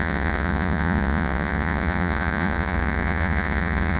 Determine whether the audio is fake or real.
fake